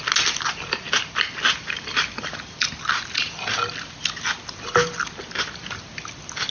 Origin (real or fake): real